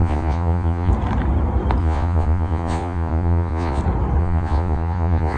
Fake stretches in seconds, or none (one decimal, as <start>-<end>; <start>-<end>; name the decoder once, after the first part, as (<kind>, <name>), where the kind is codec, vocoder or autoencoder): 0.0-0.9 (vocoder, Vocos); 1.8-3.8; 4.2-5.4